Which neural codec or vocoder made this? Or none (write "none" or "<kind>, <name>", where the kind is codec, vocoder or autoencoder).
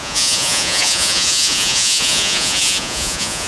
vocoder, Vocos